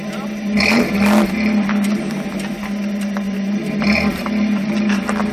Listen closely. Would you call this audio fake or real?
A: real